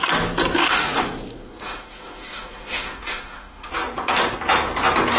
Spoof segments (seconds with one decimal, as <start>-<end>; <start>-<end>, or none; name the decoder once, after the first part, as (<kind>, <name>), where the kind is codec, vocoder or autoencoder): 0.6-3.7 (autoencoder, DAC-VAE)

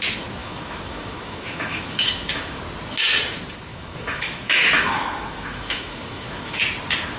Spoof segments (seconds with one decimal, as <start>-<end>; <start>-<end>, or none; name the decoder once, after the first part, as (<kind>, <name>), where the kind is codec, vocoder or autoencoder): 0.4-2.6 (autoencoder, DAC-VAE); 3.7-6.6

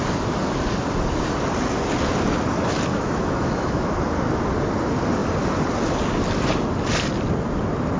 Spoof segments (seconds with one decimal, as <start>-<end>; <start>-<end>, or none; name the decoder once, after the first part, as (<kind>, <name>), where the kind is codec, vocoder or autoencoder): 2.9-3.9 (autoencoder, DAC-VAE)

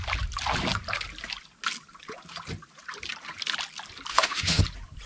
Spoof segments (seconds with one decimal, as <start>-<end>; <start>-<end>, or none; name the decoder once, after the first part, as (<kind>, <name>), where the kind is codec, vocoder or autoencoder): 4.1-4.6 (autoencoder, DAC-VAE)

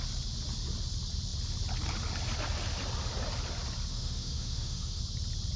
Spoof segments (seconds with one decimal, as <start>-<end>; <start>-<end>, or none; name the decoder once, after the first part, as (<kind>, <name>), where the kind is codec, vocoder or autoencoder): 3.9-5.0 (autoencoder, DAC-VAE)

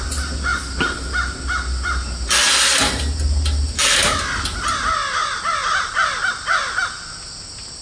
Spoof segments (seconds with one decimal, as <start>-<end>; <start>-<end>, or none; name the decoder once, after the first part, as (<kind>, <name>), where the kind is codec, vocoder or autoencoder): none